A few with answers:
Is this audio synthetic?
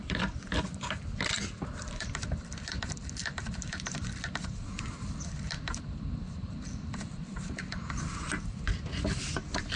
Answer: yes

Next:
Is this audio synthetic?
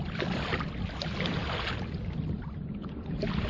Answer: no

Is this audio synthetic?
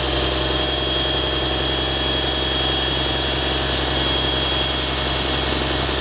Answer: no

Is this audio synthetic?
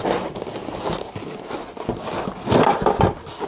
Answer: yes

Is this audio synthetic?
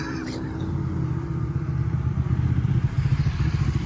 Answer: yes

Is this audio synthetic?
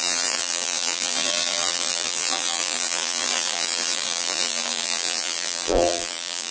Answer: yes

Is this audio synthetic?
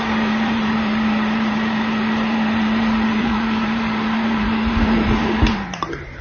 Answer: yes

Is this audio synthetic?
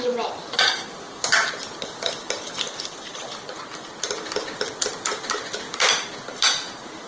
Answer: yes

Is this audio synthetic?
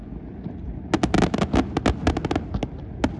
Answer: no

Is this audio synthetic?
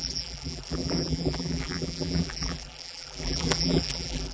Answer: yes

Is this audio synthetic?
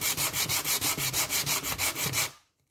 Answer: yes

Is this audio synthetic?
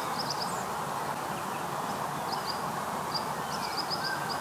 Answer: no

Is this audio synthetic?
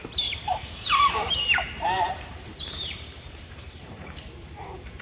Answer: yes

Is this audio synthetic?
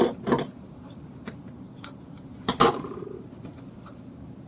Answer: yes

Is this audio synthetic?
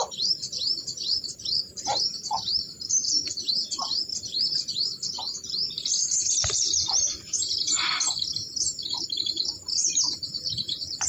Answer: yes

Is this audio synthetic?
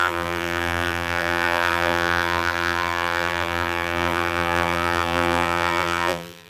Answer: yes